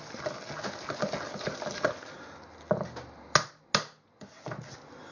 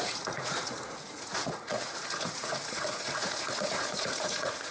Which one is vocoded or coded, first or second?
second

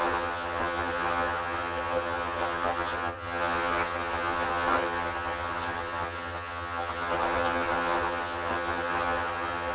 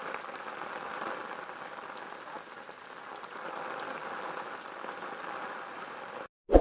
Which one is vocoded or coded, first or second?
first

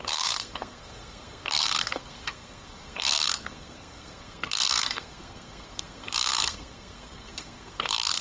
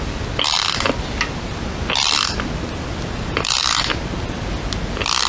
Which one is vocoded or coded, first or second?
first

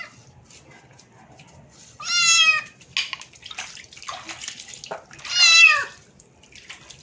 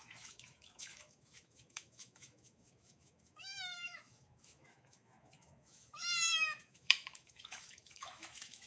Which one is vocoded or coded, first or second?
second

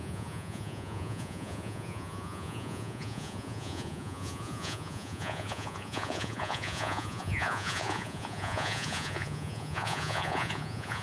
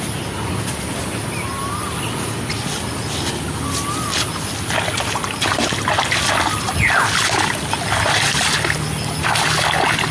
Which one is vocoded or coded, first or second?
first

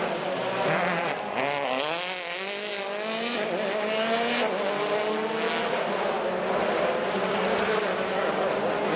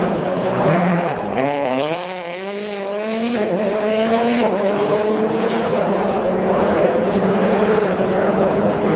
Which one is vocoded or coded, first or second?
second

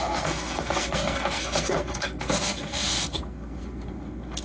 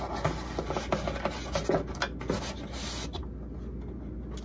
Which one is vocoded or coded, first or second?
first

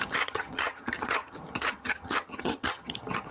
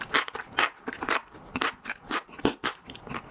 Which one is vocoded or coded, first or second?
first